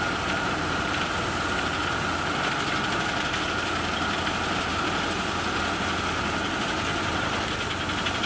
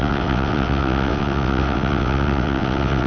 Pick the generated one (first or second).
second